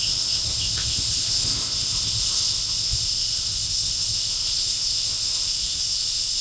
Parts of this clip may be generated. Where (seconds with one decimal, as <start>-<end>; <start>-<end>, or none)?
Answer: 0.0-6.4